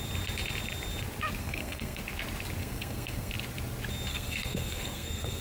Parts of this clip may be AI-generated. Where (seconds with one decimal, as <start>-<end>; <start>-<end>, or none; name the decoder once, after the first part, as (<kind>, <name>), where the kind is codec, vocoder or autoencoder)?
1.4-2.0 (codec, SNAC); 2.6-3.3; 4.1-5.4